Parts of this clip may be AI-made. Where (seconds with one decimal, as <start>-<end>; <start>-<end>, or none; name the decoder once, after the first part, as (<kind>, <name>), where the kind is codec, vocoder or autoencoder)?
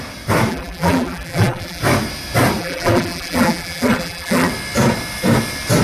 0.5-1.8 (vocoder, BigVGAN v2); 2.6-4.5